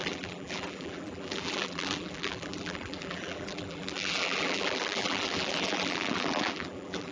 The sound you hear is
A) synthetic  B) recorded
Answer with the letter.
A